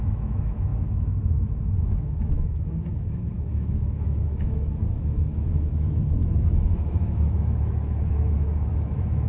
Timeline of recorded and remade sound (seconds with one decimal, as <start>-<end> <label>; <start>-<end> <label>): 0.0-9.3 remade